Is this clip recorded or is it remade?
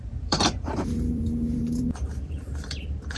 remade